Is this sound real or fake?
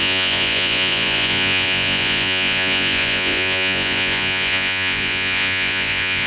fake